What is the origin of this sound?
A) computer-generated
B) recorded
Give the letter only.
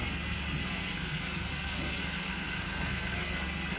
A